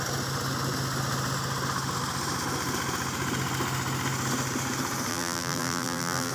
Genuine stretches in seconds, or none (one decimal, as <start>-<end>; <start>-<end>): 0.0-5.1